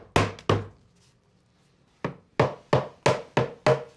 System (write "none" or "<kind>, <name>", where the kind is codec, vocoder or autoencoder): none